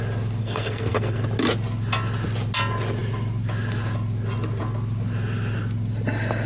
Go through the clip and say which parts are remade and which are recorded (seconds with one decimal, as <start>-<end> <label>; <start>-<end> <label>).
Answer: 0.0-0.4 recorded; 0.4-1.2 remade; 1.2-6.5 recorded